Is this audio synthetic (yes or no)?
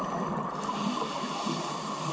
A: no